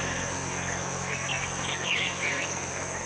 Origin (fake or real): fake